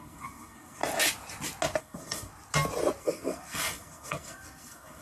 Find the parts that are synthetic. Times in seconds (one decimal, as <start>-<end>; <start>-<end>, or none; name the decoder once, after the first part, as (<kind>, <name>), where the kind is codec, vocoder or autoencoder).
0.0-0.8 (codec, SNAC); 1.8-2.3; 3.0-5.0